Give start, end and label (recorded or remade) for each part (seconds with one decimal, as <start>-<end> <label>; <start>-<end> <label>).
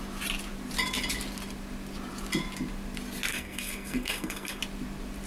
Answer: 0.0-3.3 recorded; 3.3-4.6 remade; 4.6-5.3 recorded